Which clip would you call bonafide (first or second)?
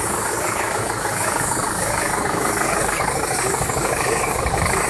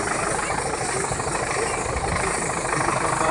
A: second